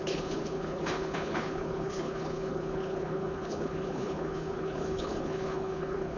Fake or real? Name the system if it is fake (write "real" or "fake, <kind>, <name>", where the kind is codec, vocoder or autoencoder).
fake, codec, HILCodec